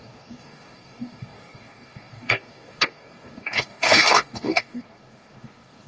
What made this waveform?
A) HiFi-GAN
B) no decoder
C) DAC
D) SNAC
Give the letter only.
C